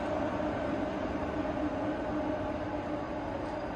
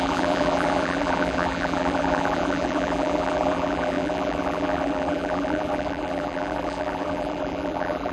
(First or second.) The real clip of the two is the first